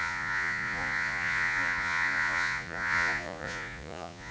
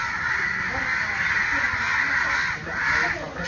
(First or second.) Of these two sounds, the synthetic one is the first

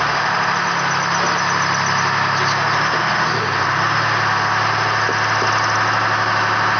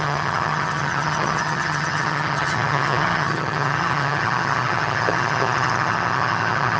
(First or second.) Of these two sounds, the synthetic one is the second